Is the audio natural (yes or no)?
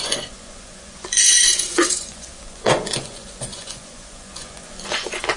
no